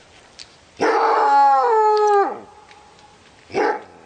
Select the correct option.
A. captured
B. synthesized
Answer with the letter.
A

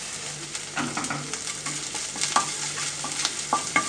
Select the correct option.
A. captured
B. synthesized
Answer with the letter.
A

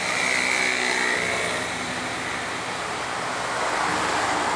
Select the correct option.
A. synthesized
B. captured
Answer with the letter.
B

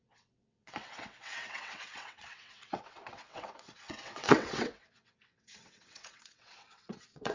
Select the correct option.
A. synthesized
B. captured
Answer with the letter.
A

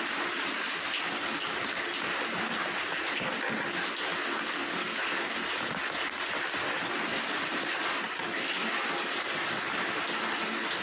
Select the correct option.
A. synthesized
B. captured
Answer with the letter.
B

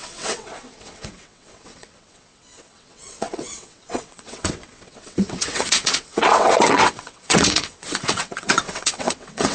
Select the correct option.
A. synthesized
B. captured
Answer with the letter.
A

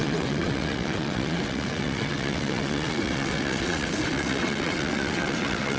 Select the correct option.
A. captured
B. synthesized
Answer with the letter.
B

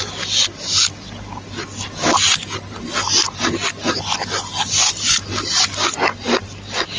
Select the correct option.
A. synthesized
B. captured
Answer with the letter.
B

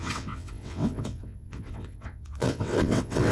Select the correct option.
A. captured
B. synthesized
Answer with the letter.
B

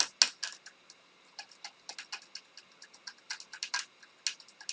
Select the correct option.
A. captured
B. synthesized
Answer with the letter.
A